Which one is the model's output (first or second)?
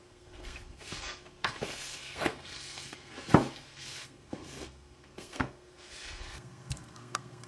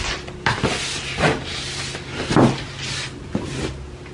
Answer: first